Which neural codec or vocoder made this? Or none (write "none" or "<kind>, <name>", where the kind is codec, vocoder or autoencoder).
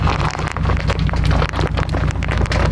none